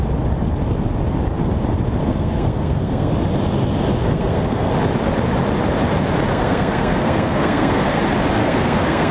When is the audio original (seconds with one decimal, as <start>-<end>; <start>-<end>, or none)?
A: 0.0-2.0; 3.1-4.0; 4.7-6.3; 8.0-8.4

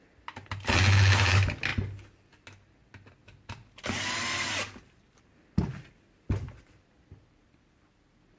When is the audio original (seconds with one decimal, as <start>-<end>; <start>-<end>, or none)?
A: 0.0-8.4

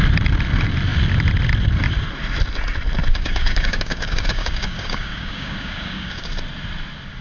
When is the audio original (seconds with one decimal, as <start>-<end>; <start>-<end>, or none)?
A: 0.0-3.1; 6.3-7.2

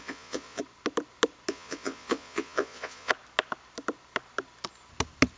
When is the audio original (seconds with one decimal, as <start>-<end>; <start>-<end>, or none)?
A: 0.6-1.5; 3.1-5.4

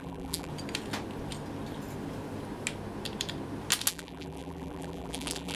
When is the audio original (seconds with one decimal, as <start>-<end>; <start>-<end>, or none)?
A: 0.5-3.9